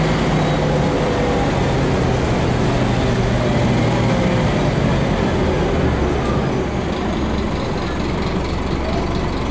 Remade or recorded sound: recorded